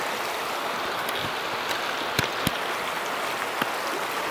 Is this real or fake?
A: real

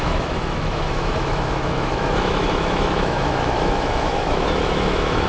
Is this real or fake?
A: fake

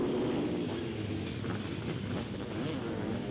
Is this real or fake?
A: real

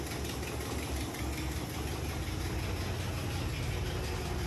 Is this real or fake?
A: real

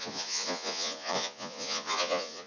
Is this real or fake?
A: fake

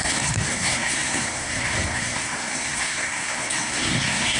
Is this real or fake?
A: fake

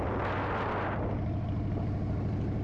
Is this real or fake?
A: real